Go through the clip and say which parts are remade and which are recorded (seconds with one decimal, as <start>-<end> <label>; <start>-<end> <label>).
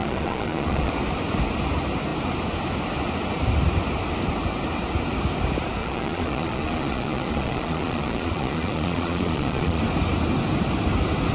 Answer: 0.0-0.9 remade; 0.9-5.8 recorded; 5.8-9.8 remade; 9.8-11.3 recorded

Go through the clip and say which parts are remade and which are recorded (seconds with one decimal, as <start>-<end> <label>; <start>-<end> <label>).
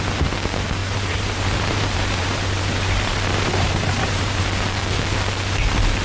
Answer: 0.0-0.8 recorded; 0.8-4.4 remade; 4.4-6.0 recorded